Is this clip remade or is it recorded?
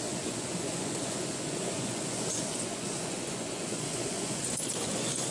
remade